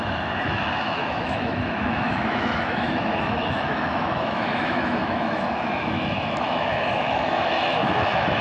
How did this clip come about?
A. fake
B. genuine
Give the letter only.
A